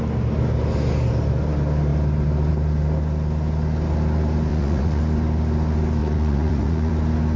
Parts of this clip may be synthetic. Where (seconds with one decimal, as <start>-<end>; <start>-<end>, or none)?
4.5-5.0; 6.0-6.9